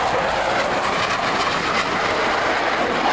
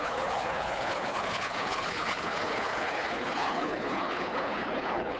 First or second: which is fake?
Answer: second